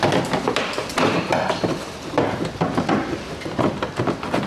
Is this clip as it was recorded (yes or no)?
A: no